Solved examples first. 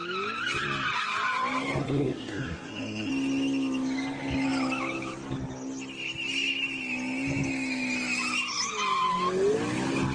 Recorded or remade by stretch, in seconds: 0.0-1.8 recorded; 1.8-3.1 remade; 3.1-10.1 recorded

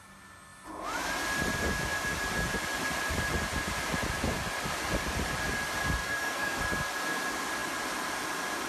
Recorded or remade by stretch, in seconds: 0.0-6.0 recorded; 6.0-6.6 remade; 6.6-8.7 recorded